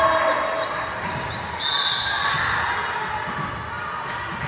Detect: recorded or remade recorded